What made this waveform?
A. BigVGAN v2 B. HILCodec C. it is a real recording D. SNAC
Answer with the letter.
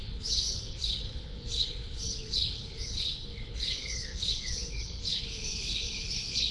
B